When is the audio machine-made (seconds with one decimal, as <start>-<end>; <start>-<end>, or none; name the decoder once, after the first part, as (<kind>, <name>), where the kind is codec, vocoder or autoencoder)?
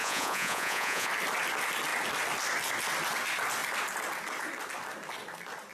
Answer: 0.0-1.1 (vocoder, Vocos)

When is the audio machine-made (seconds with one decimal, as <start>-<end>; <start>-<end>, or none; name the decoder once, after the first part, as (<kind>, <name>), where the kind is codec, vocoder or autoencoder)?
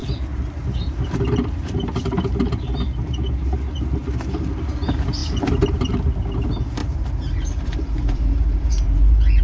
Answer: 0.0-1.2 (vocoder, BigVGAN v2); 5.2-5.9; 6.8-9.4